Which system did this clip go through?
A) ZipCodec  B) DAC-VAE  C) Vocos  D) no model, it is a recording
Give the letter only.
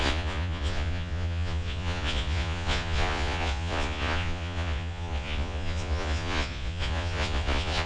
C